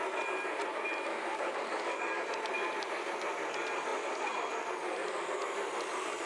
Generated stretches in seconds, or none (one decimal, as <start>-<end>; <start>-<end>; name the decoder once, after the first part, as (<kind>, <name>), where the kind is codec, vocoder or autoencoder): 1.1-2.2 (codec, DAC)